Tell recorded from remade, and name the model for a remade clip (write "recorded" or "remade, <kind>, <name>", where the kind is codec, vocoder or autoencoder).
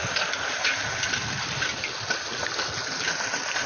recorded